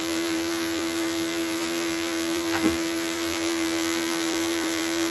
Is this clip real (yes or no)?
no